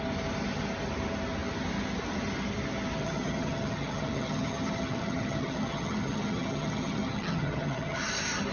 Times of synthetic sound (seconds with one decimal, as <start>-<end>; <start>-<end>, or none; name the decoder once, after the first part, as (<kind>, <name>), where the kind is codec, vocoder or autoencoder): 3.0-8.1 (vocoder, HiFi-GAN)